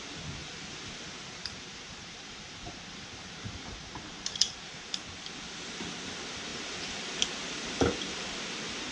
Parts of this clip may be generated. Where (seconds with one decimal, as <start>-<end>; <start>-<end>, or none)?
0.4-4.9; 6.5-7.1